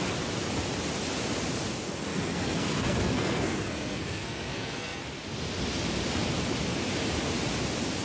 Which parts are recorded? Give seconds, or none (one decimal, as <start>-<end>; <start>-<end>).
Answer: 0.0-2.1; 5.0-8.0

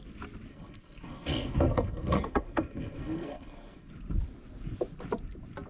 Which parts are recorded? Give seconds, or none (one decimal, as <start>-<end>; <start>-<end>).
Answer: 0.0-0.5; 3.9-5.7

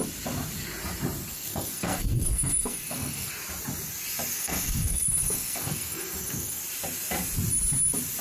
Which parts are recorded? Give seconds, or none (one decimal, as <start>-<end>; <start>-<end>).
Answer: 0.0-1.3; 3.3-4.3; 6.6-8.2

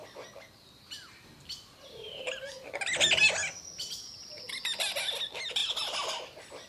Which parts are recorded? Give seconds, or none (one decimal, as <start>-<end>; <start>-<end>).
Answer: 0.0-6.7